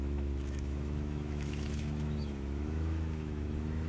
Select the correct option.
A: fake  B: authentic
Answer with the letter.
A